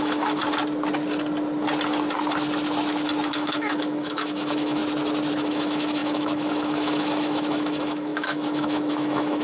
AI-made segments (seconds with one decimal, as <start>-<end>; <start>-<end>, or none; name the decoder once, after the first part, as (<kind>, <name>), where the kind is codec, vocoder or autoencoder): 0.0-0.4 (autoencoder, DAC-VAE); 3.3-4.8; 5.3-9.4